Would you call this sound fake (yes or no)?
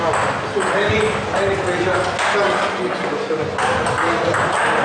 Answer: no